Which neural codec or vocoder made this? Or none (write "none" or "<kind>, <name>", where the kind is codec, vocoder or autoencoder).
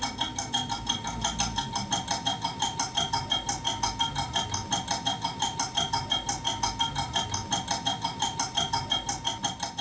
none